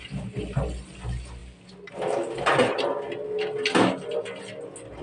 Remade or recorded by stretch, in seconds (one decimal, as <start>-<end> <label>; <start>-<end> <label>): 0.0-5.0 recorded